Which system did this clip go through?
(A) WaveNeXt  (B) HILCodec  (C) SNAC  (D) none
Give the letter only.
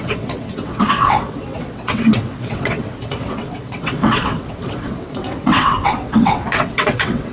A